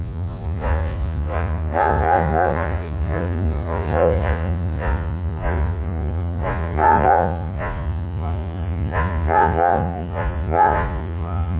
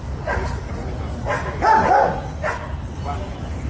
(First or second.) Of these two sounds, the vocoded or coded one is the first